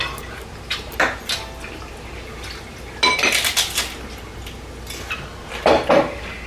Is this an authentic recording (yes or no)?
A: yes